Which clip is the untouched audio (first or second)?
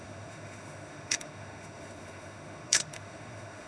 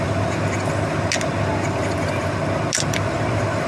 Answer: second